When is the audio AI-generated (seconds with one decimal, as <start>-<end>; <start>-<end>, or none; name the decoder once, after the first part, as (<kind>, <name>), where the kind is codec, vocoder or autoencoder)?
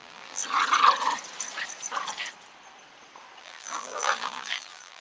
0.0-0.4 (vocoder, BigVGAN v2); 3.4-5.0